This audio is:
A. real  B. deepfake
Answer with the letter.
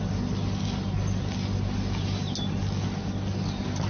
A